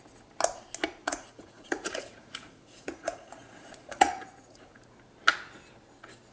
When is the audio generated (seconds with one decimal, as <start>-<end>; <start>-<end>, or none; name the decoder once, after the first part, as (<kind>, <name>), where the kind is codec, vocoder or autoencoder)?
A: 1.0-4.8 (vocoder, Vocos)

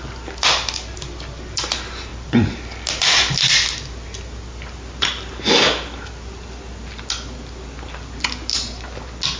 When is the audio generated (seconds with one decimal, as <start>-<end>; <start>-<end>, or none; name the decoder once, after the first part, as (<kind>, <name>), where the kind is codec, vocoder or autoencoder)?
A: none

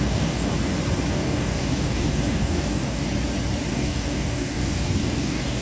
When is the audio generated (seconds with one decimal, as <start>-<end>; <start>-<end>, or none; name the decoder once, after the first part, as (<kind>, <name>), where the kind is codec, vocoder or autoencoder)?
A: 0.0-0.5 (codec, DAC); 1.1-3.0; 3.7-5.6

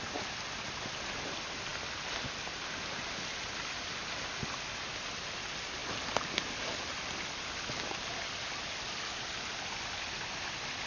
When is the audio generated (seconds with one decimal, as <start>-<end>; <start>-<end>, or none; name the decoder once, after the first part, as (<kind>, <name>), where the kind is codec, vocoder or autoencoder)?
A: none